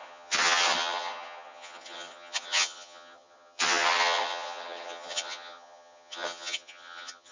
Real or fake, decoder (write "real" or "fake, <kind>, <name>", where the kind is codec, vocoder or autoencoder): fake, vocoder, HiFi-GAN